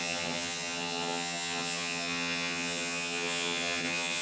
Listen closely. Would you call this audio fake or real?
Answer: fake